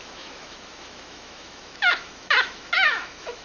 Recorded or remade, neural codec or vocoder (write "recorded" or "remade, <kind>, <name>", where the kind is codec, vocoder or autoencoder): remade, autoencoder, DAC-VAE